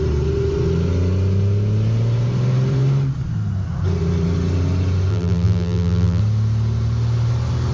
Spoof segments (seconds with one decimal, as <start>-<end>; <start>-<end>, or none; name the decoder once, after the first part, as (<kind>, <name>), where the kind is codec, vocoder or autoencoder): 5.1-6.2 (vocoder, BigVGAN v2)